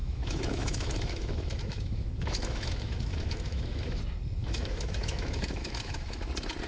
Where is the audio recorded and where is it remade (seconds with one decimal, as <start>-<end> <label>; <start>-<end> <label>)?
0.0-4.0 remade; 4.0-4.4 recorded; 4.4-6.3 remade; 6.3-6.7 recorded